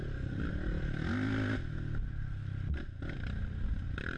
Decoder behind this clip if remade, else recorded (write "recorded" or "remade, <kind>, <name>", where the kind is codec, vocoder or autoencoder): recorded